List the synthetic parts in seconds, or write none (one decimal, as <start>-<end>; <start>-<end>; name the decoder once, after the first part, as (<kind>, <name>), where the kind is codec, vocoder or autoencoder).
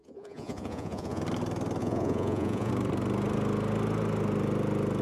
0.0-1.2 (vocoder, Vocos); 1.8-2.7